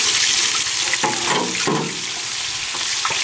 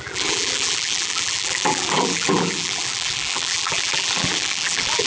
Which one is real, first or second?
first